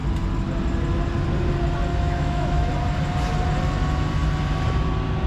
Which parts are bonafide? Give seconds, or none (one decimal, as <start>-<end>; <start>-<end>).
0.0-1.9; 2.7-5.3